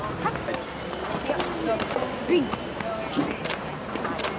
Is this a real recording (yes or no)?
yes